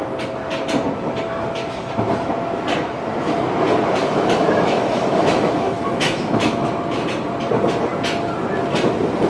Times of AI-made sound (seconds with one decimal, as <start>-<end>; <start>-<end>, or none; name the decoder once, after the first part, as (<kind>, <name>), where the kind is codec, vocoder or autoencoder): 4.0-6.7 (autoencoder, DAC-VAE)